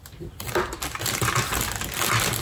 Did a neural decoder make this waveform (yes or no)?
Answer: no